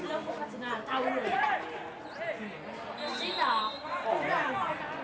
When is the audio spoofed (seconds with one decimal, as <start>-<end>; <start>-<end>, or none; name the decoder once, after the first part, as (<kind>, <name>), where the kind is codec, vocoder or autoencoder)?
none